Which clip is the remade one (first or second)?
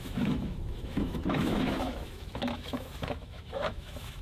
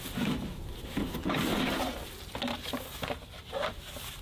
first